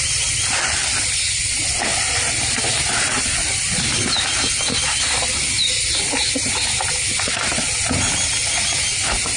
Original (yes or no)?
yes